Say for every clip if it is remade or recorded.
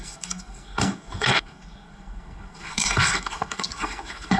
remade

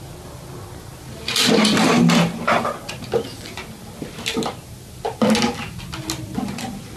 recorded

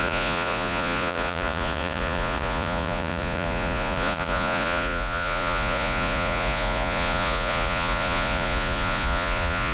remade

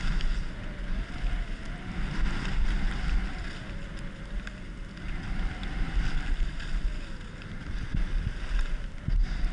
recorded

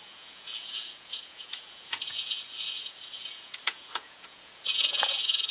remade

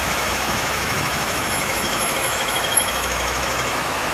remade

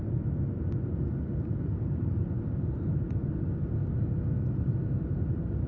recorded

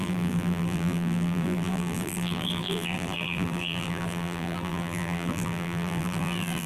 remade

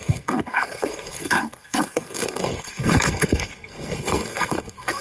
remade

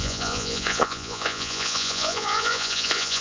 remade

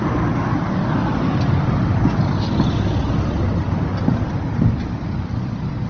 recorded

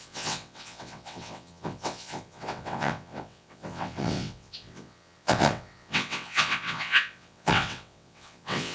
remade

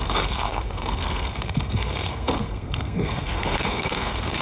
remade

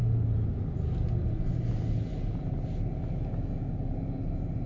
recorded